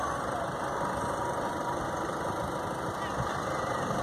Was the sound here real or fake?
real